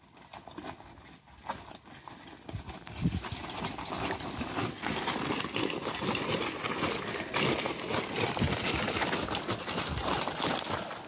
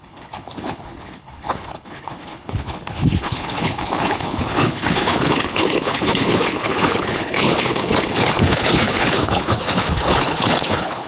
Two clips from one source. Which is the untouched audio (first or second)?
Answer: first